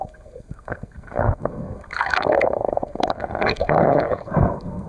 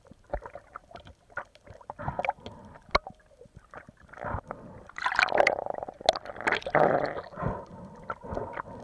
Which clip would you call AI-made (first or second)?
first